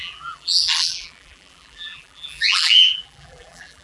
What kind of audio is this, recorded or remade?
remade